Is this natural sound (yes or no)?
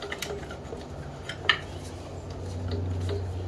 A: yes